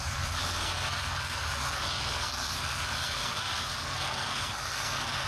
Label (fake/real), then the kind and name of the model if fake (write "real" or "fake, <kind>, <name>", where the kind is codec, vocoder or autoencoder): fake, codec, SNAC